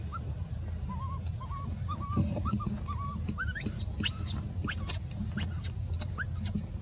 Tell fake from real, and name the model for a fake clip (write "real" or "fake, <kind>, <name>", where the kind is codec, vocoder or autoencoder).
real